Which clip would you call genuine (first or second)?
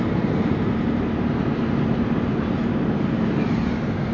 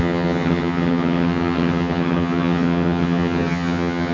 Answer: first